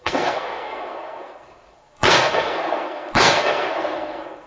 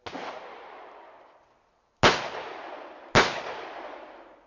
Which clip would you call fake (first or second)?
first